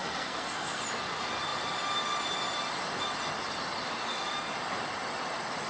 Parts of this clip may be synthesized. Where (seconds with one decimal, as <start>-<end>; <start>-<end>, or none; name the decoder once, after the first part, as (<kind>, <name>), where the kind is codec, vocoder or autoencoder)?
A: 0.0-0.8 (codec, SNAC)